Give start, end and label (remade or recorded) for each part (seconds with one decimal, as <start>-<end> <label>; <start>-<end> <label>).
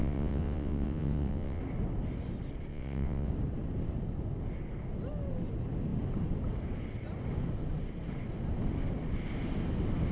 0.0-1.6 remade; 1.6-2.7 recorded; 2.7-3.3 remade; 3.3-10.1 recorded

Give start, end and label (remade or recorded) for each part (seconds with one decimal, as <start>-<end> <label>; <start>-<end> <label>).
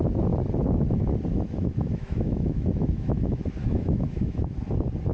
0.0-1.3 recorded; 1.3-4.4 remade; 4.4-5.1 recorded